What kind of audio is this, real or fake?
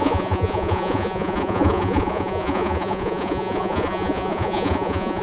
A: fake